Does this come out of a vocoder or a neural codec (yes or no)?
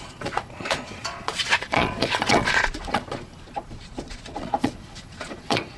yes